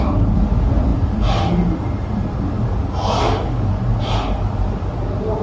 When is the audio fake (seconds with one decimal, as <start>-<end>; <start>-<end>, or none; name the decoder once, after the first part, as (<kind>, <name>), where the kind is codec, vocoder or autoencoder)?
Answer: none